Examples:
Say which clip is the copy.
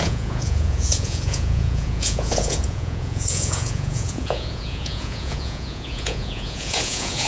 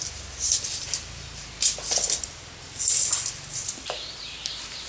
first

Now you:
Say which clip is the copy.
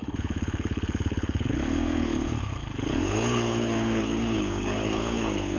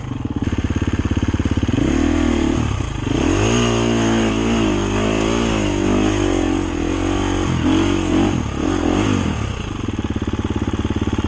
first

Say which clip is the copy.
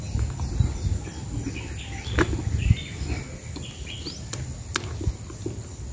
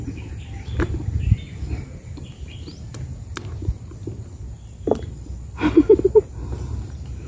second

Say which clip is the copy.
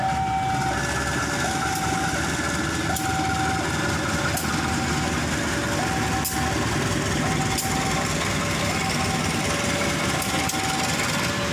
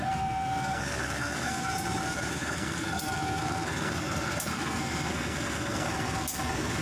second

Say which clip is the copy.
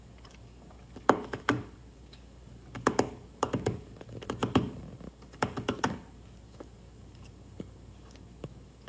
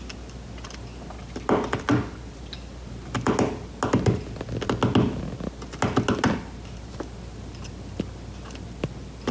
first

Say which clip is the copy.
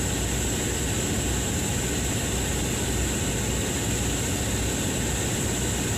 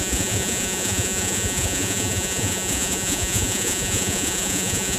second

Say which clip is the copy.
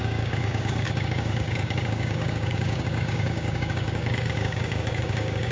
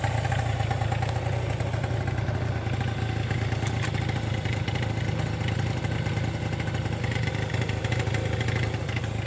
first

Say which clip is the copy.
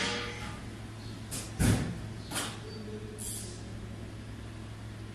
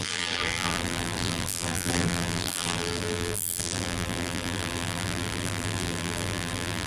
second